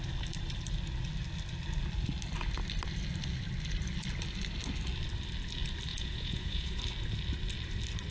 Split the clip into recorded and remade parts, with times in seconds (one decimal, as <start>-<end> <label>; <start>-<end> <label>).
0.0-5.9 recorded; 5.9-6.8 remade; 6.8-8.1 recorded

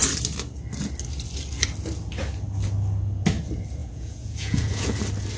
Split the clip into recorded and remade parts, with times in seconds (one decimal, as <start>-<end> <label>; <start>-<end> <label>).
0.0-3.8 recorded; 3.8-5.0 remade; 5.0-5.4 recorded

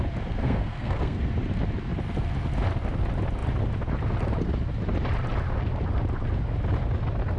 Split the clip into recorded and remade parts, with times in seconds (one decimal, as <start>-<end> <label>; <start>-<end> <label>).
0.0-0.4 recorded; 0.4-1.2 remade; 1.2-7.4 recorded

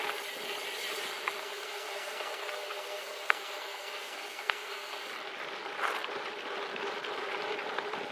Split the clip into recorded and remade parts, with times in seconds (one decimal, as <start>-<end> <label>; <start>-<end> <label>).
0.0-1.4 recorded; 1.4-5.1 remade; 5.1-8.1 recorded

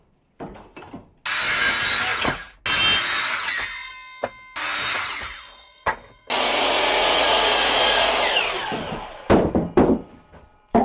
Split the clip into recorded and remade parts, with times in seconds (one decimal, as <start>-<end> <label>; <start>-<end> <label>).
0.0-2.1 recorded; 2.1-2.6 remade; 2.6-5.1 recorded; 5.1-8.1 remade; 8.1-10.8 recorded

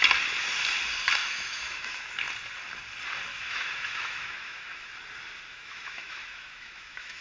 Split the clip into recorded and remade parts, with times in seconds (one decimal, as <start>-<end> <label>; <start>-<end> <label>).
0.0-1.2 recorded; 1.2-2.1 remade; 2.1-3.3 recorded; 3.3-4.9 remade; 4.9-5.5 recorded; 5.5-7.2 remade

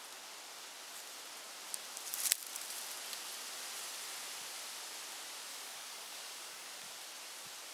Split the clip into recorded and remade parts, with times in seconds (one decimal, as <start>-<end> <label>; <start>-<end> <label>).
0.0-5.5 recorded; 5.5-6.9 remade; 6.9-7.7 recorded

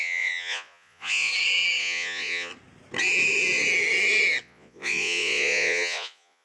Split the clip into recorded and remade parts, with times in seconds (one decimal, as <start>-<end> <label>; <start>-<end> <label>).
0.0-1.3 remade; 1.3-1.8 recorded; 1.8-2.5 remade; 2.5-4.4 recorded; 4.4-6.4 remade